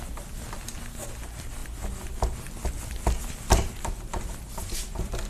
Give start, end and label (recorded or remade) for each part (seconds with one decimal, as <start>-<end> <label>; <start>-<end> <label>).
0.0-5.3 recorded